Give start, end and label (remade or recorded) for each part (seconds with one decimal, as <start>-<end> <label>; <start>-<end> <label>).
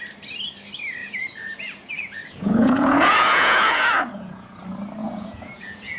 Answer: 0.0-1.0 recorded; 1.0-4.6 remade; 4.6-5.0 recorded; 5.0-6.0 remade